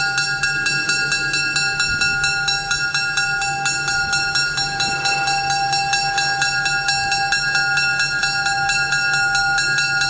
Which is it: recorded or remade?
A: recorded